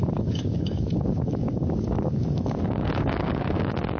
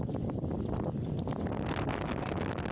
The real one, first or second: second